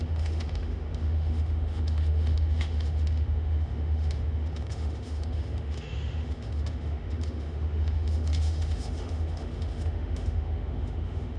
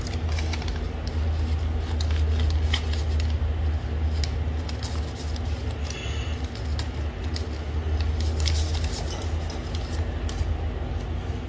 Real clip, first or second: second